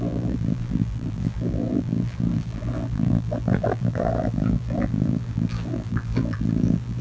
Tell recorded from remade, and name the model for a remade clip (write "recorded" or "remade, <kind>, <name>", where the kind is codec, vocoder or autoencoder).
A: remade, vocoder, BigVGAN v2